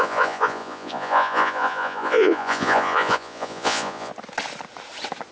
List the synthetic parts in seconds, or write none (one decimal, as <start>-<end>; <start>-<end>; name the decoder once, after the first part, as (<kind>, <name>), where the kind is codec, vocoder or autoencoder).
0.0-4.1 (vocoder, Vocos)